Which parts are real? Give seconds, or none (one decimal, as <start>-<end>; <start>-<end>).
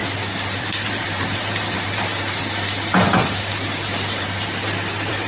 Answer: 0.0-0.6; 2.1-4.1